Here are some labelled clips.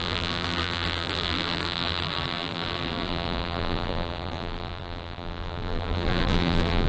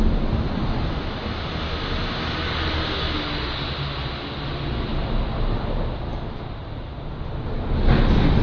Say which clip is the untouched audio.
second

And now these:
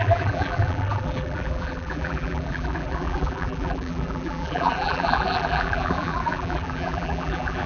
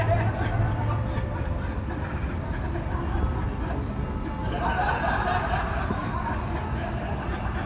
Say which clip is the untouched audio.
second